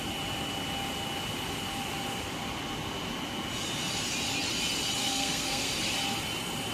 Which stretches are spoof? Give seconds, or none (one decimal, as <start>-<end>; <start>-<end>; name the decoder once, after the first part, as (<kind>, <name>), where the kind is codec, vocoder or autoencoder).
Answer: 5.0-5.7 (codec, SNAC)